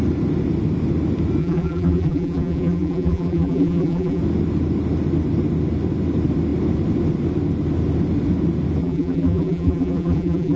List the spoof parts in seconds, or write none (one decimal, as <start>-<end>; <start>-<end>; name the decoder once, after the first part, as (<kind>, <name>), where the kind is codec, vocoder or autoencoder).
1.4-4.2 (vocoder, BigVGAN v2); 8.8-10.6